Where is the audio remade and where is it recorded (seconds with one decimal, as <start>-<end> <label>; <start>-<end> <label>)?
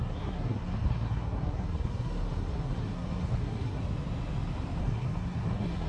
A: 0.0-3.8 remade; 3.8-4.8 recorded; 4.8-5.9 remade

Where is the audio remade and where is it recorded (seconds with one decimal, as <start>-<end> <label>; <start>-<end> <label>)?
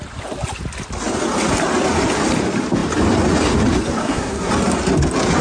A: 0.0-4.0 recorded; 4.0-4.5 remade; 4.5-5.4 recorded